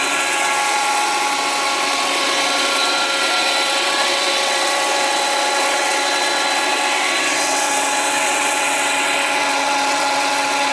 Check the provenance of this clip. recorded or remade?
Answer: remade